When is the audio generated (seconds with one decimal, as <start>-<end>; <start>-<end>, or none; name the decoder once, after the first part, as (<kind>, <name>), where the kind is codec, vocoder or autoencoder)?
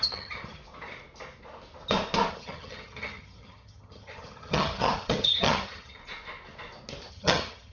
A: 0.0-0.6 (vocoder, HiFi-GAN); 2.3-6.0; 7.1-7.7